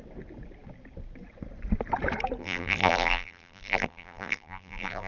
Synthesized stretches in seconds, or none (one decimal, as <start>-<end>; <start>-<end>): 2.4-5.1